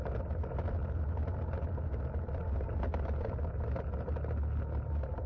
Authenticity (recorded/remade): recorded